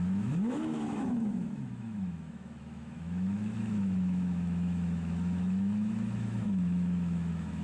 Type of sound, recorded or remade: remade